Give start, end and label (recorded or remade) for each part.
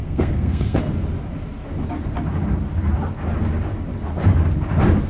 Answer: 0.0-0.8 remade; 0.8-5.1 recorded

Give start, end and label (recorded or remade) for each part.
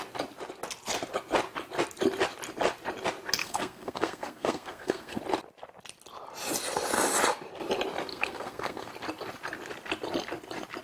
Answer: 0.0-3.4 recorded; 3.4-5.2 remade; 5.2-8.1 recorded; 8.1-8.9 remade; 8.9-10.8 recorded